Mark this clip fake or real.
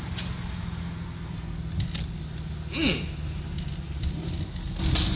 real